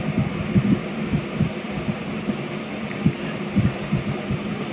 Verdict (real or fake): real